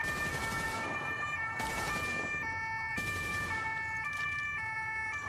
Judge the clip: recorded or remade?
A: recorded